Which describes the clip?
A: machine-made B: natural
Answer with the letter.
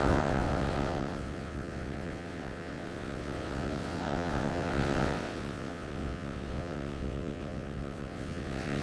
A